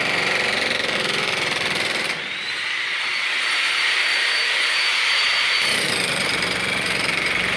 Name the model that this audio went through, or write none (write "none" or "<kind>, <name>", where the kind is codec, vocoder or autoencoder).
vocoder, BigVGAN v2